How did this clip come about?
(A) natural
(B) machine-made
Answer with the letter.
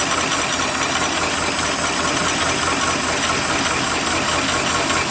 A